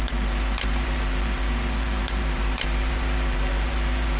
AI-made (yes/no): yes